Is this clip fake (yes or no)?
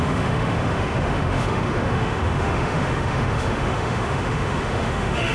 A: yes